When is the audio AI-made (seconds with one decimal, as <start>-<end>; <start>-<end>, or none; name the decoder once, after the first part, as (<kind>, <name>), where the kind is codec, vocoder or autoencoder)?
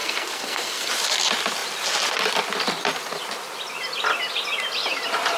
0.0-0.9 (codec, SNAC)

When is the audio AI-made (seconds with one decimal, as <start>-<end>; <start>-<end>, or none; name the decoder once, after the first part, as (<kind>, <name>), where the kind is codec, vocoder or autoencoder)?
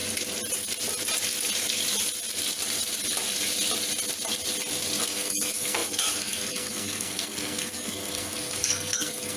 5.0-9.4 (codec, SNAC)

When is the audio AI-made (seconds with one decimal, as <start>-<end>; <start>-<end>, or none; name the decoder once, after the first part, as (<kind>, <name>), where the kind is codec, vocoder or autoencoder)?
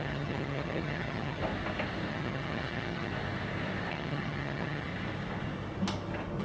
0.0-1.4 (vocoder, HiFi-GAN); 2.1-3.1; 3.9-4.9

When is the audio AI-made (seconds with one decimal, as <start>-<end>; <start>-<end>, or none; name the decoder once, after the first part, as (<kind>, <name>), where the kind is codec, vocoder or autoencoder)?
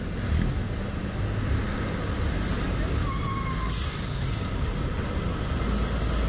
none